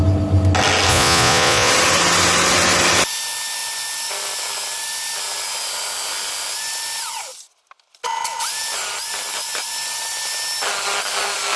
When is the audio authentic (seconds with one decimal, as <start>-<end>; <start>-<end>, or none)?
0.0-0.9; 1.7-11.6